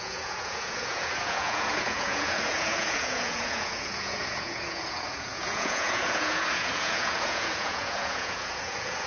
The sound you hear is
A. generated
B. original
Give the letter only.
A